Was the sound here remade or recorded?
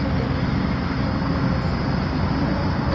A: recorded